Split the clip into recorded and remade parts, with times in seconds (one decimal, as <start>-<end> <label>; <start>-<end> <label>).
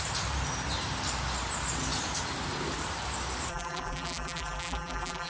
0.0-3.5 recorded; 3.5-5.3 remade